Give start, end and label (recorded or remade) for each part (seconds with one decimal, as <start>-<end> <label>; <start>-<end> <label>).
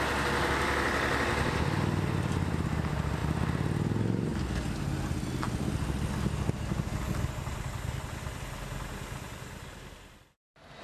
0.0-10.8 recorded